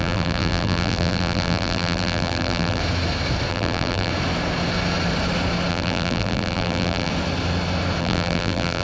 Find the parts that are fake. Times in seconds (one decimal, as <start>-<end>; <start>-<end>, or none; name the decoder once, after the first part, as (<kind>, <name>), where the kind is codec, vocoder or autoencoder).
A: 0.0-2.8 (vocoder, BigVGAN v2); 3.5-4.1; 5.7-7.1; 8.0-8.8

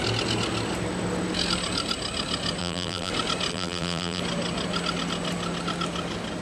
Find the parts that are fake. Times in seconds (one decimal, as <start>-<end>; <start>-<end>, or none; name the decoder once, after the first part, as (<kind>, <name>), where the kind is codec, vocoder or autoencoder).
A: 2.6-3.1 (vocoder, BigVGAN v2); 3.5-4.2

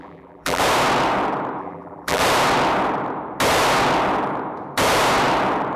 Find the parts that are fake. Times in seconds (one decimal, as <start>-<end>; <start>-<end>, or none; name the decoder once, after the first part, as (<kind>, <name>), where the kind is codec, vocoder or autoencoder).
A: 0.0-0.6 (vocoder, BigVGAN v2); 1.6-2.2

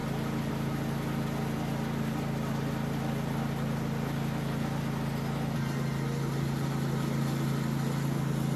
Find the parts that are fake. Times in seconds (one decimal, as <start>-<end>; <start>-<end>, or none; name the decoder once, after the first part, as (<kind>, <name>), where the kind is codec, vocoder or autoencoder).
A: none

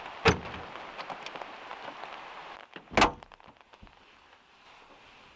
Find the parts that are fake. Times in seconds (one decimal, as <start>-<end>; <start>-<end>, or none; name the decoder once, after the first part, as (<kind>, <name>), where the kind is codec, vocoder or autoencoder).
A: none

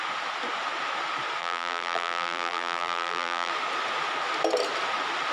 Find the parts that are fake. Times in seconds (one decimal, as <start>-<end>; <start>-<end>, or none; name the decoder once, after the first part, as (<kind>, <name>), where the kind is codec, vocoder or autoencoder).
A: 1.4-3.5 (vocoder, BigVGAN v2)

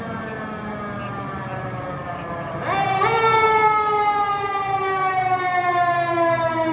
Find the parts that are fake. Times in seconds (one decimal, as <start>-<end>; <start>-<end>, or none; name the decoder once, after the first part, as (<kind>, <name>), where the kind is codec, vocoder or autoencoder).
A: 1.5-3.3 (vocoder, BigVGAN v2)